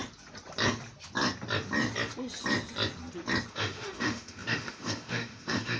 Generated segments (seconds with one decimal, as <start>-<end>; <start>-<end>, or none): 3.5-5.8